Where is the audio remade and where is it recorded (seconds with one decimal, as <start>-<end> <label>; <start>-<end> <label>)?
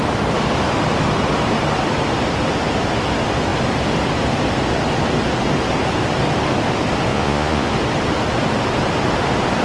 0.0-7.1 recorded; 7.1-7.7 remade; 7.7-9.6 recorded